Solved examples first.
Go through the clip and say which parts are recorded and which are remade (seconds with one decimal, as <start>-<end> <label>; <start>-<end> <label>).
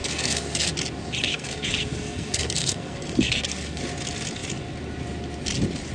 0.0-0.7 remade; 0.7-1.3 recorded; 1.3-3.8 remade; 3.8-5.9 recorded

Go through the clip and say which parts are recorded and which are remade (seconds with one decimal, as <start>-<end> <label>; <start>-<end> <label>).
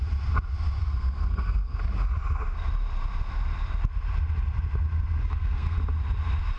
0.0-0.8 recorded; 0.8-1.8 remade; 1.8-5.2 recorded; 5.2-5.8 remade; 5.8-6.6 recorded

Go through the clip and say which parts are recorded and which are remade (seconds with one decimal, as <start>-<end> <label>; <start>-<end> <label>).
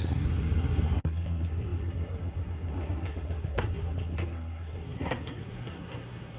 0.0-6.4 remade